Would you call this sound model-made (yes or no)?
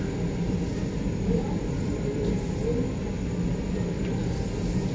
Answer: no